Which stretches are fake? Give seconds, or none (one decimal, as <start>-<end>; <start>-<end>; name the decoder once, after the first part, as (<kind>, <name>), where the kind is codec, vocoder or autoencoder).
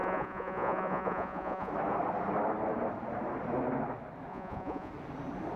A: 0.0-1.7 (vocoder, Vocos); 4.3-4.9